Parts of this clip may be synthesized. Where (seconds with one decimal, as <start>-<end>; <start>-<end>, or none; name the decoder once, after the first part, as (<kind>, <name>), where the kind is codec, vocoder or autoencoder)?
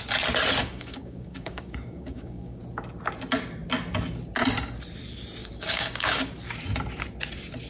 0.6-2.6 (codec, DAC); 5.4-6.3